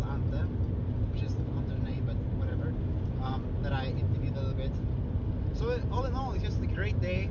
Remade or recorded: recorded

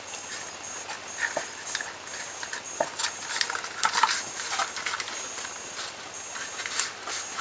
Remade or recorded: recorded